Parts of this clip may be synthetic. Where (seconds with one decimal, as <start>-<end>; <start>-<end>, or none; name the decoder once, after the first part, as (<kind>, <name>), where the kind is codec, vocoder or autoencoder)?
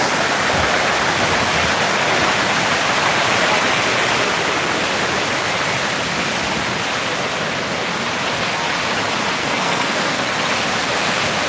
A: 9.4-10.2 (codec, SNAC)